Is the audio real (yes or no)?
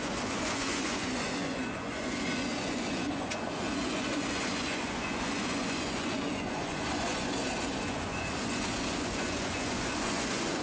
no